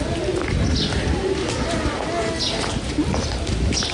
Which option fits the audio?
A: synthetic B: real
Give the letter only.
B